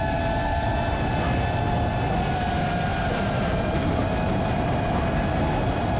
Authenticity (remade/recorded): recorded